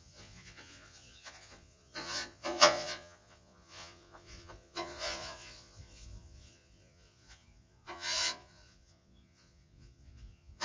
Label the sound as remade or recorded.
remade